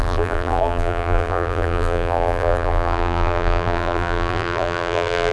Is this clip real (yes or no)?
no